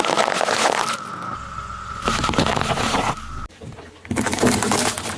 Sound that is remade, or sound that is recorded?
recorded